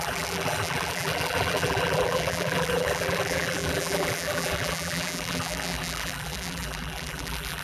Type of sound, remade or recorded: remade